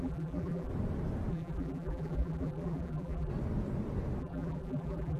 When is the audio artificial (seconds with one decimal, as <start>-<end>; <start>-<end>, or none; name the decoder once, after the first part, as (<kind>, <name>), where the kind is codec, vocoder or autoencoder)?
0.0-0.7 (vocoder, BigVGAN v2); 1.3-3.3; 4.2-5.2